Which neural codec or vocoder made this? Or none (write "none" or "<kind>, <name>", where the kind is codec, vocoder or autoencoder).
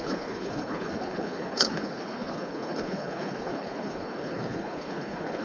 codec, HILCodec